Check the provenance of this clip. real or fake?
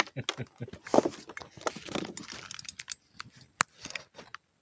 real